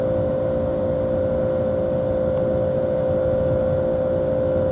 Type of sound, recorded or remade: recorded